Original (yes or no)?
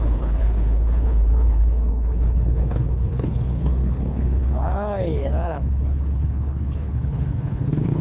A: no